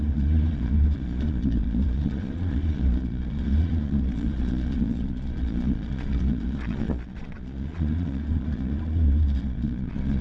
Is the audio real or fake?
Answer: fake